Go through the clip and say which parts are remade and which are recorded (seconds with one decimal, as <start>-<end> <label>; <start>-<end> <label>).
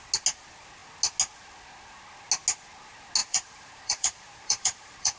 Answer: 0.0-3.2 recorded; 3.2-5.2 remade